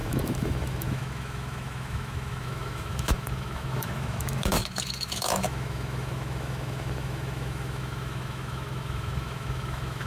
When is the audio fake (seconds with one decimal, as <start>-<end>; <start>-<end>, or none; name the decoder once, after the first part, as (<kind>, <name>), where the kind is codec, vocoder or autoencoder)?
0.0-10.1 (autoencoder, DAC-VAE)